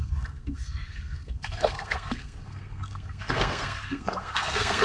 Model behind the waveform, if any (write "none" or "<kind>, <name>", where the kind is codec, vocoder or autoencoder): codec, SNAC